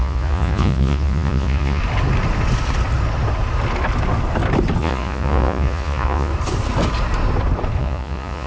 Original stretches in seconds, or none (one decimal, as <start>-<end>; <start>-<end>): 1.8-4.8; 6.3-7.8